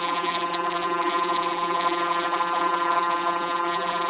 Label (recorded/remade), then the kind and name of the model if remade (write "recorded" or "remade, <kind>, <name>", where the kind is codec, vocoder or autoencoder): remade, vocoder, BigVGAN v2